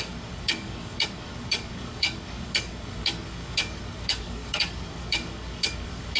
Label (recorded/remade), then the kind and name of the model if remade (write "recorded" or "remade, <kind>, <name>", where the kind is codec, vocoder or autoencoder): remade, codec, DAC